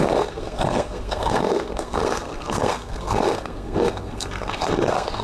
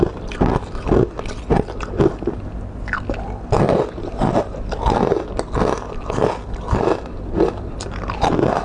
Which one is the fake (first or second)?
first